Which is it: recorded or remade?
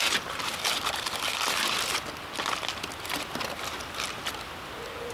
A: recorded